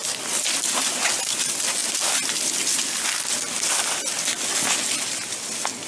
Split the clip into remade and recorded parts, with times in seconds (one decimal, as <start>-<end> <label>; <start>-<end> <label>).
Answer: 0.0-5.9 recorded